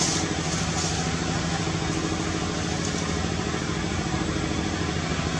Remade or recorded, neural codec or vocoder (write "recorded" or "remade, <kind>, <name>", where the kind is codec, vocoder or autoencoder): recorded